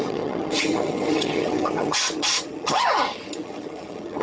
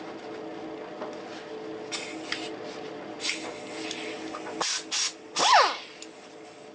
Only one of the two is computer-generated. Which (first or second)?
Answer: first